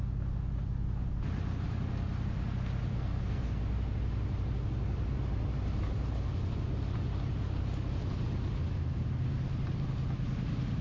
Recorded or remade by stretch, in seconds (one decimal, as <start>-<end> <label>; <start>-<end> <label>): 0.0-2.9 recorded; 2.9-3.6 remade; 3.6-10.8 recorded